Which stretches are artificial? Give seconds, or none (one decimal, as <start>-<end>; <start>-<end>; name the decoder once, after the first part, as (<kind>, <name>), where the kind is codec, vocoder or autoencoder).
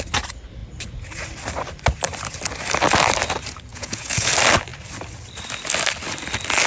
3.7-4.3 (vocoder, Vocos)